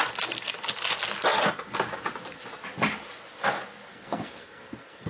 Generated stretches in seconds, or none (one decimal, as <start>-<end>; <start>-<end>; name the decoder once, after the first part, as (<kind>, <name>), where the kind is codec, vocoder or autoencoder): 3.9-5.1 (codec, SNAC)